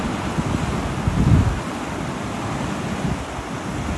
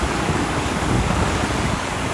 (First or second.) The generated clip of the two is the second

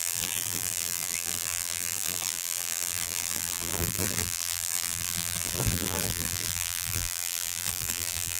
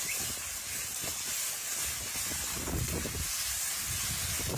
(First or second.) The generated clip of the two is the first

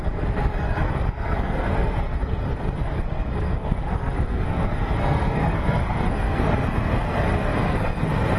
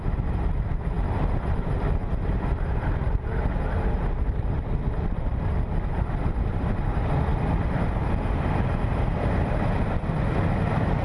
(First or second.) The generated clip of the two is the first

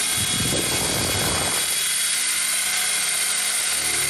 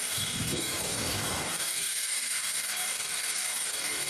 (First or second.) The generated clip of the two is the second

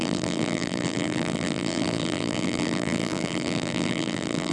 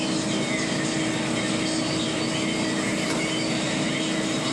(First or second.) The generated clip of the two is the first